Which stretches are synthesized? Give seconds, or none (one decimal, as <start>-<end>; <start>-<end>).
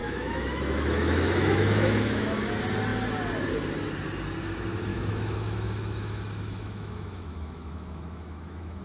0.0-2.5; 4.9-8.8